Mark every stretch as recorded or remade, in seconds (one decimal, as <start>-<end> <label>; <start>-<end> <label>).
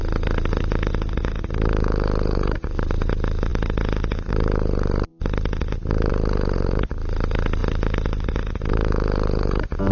0.0-9.9 recorded